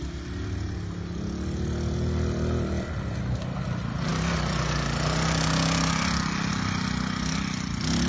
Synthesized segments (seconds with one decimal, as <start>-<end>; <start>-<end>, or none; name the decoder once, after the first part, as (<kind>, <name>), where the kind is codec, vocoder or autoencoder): none